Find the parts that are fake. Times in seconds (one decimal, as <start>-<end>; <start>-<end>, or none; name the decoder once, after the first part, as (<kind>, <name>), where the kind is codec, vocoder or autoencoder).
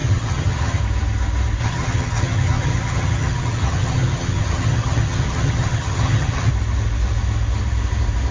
0.0-0.8 (vocoder, HiFi-GAN); 1.6-6.5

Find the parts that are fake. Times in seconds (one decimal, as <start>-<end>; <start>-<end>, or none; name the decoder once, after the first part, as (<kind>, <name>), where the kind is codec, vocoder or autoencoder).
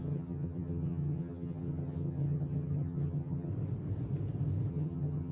0.0-3.5 (vocoder, HiFi-GAN); 4.7-5.3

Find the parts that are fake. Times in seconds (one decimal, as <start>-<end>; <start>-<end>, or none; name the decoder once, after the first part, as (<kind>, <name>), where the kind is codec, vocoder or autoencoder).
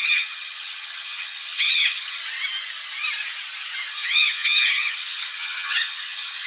0.0-2.2 (vocoder, HiFi-GAN); 3.9-6.5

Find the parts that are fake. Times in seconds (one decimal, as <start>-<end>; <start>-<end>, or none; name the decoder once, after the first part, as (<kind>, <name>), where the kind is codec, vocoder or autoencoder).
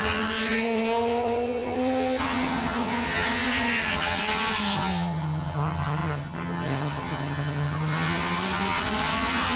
0.0-9.6 (vocoder, HiFi-GAN)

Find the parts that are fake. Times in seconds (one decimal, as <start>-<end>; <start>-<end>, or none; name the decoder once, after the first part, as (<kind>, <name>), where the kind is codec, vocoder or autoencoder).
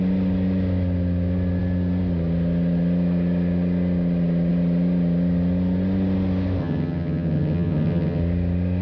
6.6-8.2 (vocoder, HiFi-GAN)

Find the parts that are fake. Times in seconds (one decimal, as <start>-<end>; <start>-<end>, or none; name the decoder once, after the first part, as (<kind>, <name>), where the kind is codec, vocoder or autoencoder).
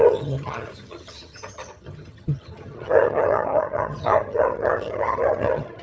0.0-5.8 (vocoder, HiFi-GAN)